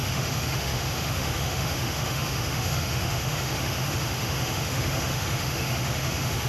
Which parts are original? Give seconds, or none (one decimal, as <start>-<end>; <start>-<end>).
none